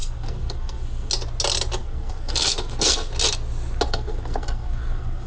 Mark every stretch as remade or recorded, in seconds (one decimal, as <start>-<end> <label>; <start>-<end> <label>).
0.0-1.1 remade; 1.1-1.8 recorded; 1.8-3.1 remade; 3.1-3.9 recorded; 3.9-5.3 remade